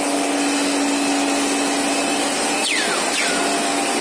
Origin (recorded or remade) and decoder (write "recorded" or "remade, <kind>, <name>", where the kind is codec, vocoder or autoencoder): recorded